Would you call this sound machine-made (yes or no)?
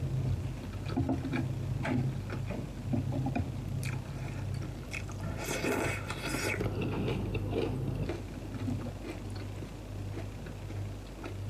no